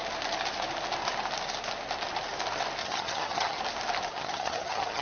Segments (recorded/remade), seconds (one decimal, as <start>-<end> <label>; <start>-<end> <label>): 0.0-2.8 recorded; 2.8-3.6 remade; 3.6-4.1 recorded; 4.1-5.0 remade